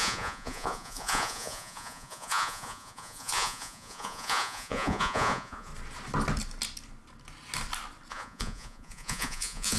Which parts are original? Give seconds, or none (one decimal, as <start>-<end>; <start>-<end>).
5.7-8.1